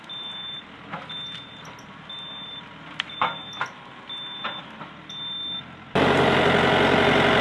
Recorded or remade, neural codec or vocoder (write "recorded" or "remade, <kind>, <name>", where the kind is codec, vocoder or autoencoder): recorded